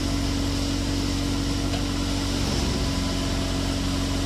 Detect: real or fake real